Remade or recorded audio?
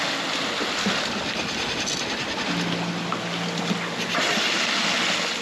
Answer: recorded